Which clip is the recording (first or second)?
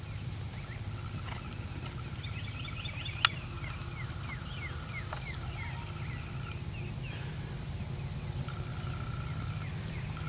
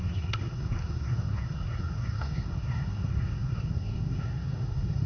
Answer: first